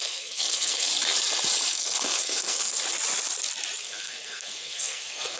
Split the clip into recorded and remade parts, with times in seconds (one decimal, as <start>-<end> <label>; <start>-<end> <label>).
0.0-0.9 remade; 0.9-1.7 recorded; 1.7-2.7 remade; 2.7-3.8 recorded; 3.8-5.4 remade